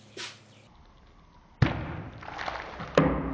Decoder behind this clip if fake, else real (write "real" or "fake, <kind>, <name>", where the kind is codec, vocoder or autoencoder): real